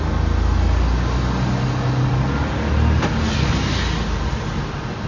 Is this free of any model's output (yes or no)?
yes